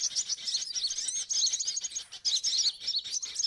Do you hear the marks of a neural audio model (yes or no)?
no